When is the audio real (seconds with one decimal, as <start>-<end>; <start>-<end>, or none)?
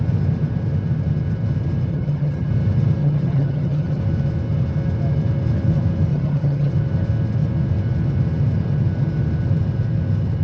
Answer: 0.0-1.9; 2.5-3.0; 4.0-6.1; 6.7-10.4